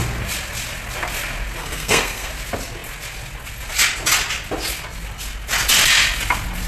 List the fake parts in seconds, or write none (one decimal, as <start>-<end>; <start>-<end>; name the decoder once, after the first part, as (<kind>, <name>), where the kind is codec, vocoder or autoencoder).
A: 1.6-2.3 (codec, SNAC)